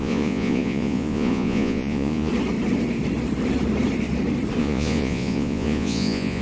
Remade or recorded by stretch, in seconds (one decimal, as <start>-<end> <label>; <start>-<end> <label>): 0.0-2.3 remade; 2.3-4.6 recorded; 4.6-6.4 remade